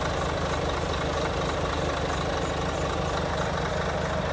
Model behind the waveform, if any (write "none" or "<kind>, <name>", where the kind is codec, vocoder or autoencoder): none